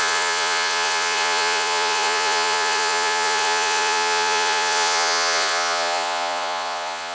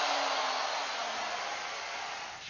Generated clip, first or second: first